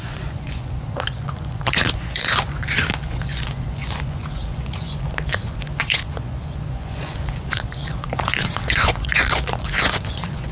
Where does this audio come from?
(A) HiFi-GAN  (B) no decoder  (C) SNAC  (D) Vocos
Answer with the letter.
D